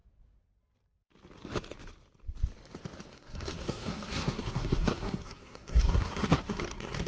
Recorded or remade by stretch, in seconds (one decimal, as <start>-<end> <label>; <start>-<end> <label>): 0.0-3.1 recorded; 3.1-7.1 remade